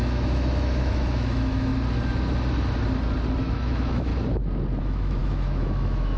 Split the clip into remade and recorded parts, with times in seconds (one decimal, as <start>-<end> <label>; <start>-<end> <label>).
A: 0.0-1.7 remade; 1.7-3.4 recorded; 3.4-4.1 remade; 4.1-4.8 recorded; 4.8-6.2 remade